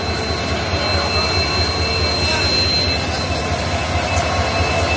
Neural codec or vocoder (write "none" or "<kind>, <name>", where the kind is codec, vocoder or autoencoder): none